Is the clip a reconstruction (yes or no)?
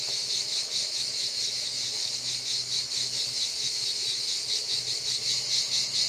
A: yes